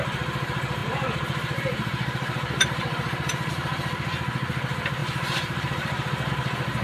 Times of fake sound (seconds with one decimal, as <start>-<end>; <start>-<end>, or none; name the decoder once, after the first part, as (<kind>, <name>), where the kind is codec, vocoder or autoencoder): 0.8-3.5 (vocoder, BigVGAN v2); 5.0-6.3